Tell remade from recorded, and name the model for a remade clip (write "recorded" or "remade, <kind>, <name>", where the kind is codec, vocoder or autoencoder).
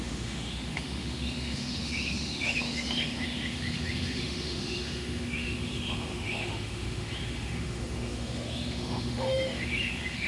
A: remade, autoencoder, DAC-VAE